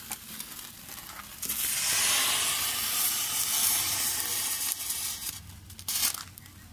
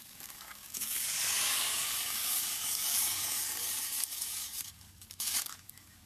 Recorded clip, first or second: first